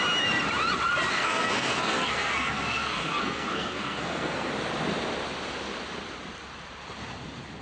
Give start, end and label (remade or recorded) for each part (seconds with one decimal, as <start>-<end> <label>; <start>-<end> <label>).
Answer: 0.0-1.1 recorded; 1.1-4.5 remade; 4.5-7.6 recorded